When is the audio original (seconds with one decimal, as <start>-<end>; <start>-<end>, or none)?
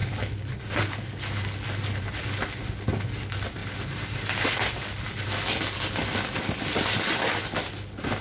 0.0-8.2